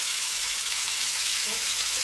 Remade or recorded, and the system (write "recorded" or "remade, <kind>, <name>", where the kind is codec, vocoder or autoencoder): remade, autoencoder, DAC-VAE